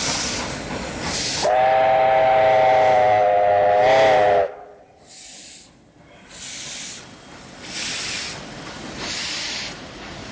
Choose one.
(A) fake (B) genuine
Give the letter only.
B